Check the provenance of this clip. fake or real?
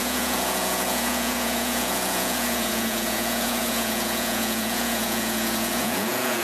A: fake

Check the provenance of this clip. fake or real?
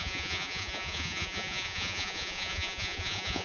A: fake